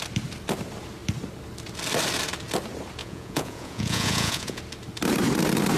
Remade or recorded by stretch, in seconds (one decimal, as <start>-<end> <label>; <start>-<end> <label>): 0.0-3.0 recorded; 3.0-4.6 remade; 4.6-5.8 recorded